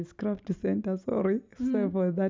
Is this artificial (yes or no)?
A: no